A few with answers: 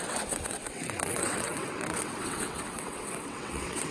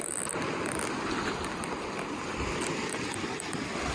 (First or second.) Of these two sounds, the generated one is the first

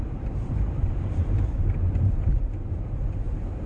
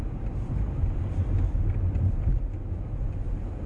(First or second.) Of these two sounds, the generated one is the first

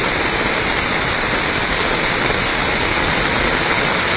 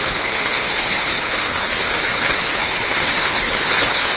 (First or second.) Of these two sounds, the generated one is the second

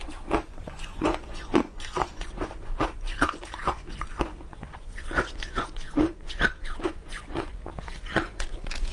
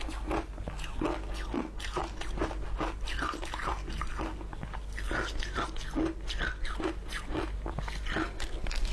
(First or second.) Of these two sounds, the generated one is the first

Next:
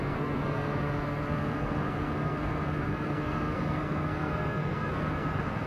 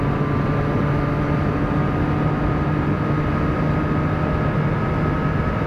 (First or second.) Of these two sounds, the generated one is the first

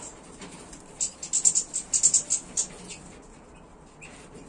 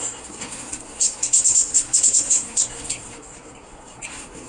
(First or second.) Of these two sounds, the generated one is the second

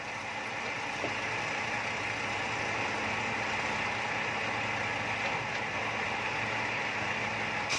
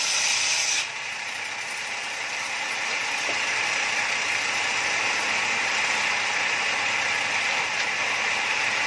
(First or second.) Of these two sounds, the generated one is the second